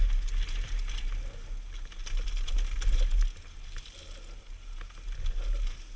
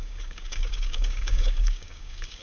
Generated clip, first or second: second